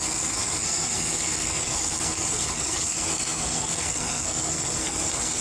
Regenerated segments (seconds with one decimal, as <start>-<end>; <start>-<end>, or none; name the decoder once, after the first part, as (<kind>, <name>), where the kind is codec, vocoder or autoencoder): 0.0-5.4 (codec, SNAC)